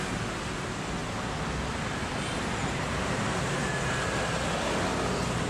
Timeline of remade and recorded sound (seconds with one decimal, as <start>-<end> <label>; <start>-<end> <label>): 0.0-5.5 recorded